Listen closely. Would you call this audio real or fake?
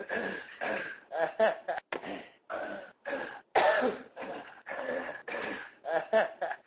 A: real